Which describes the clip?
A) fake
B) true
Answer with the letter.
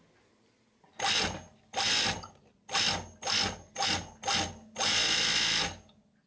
B